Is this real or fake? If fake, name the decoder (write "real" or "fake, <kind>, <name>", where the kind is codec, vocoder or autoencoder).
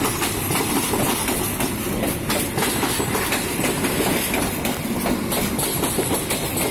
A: real